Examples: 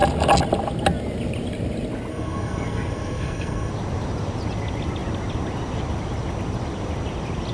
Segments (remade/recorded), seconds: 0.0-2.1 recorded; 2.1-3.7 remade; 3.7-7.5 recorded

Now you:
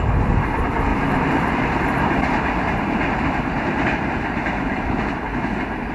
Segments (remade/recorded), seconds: 0.0-0.9 recorded; 0.9-1.8 remade; 1.8-2.3 recorded; 2.3-4.9 remade; 4.9-5.9 recorded

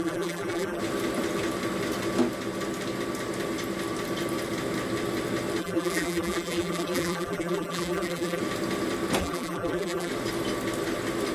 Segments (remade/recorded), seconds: 0.0-0.8 remade; 0.8-5.6 recorded; 5.6-8.4 remade; 8.4-9.2 recorded; 9.2-10.1 remade; 10.1-11.3 recorded

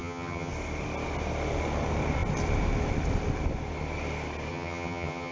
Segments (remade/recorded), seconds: 0.0-0.5 remade; 0.5-4.5 recorded; 4.5-5.3 remade